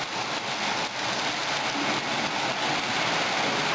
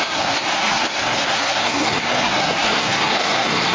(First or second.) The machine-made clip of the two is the second